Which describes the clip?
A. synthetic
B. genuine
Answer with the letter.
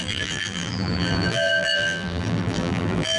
A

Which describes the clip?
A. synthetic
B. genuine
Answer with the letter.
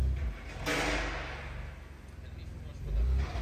B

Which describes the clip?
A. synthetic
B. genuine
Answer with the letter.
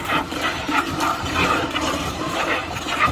A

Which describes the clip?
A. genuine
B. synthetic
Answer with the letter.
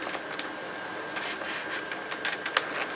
A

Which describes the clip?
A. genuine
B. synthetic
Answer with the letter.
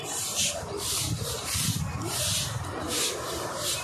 B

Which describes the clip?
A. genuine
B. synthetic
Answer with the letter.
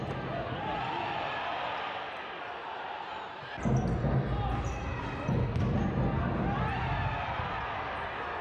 A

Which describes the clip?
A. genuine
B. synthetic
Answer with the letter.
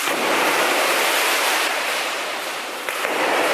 B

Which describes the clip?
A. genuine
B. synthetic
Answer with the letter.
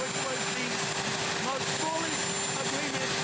A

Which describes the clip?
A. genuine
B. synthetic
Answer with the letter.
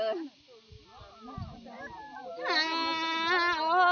A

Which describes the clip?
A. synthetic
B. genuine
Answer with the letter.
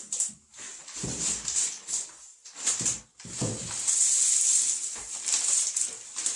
B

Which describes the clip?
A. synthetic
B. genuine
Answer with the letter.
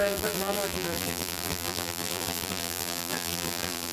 A